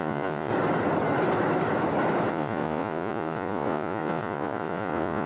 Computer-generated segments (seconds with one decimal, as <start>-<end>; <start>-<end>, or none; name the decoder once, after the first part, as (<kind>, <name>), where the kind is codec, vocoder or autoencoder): 0.0-0.5 (vocoder, Vocos); 2.3-5.3